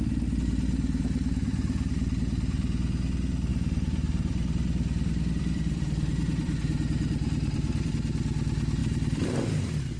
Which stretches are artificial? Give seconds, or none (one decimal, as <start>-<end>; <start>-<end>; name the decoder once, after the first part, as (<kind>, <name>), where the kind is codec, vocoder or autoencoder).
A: 3.5-7.9 (vocoder, BigVGAN v2); 8.8-9.4